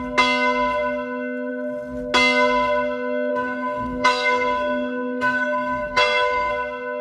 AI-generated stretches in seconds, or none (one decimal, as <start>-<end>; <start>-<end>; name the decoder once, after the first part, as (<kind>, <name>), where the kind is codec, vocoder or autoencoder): 3.3-6.5 (codec, SNAC)